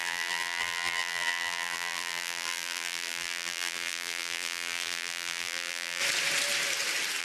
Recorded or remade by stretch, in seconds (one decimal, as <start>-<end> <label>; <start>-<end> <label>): 0.0-6.0 remade; 6.0-7.2 recorded